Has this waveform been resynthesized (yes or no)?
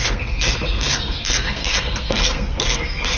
yes